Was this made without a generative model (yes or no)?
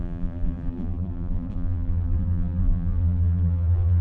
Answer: no